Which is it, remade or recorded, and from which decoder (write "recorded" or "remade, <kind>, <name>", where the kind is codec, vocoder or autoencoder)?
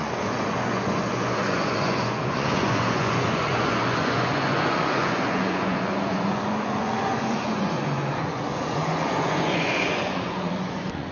remade, vocoder, Vocos